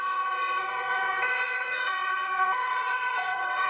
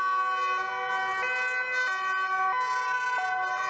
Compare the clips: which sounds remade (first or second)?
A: first